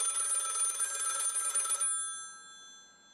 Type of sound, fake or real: real